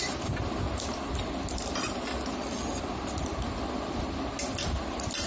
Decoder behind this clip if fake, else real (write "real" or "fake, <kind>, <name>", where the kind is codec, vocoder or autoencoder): real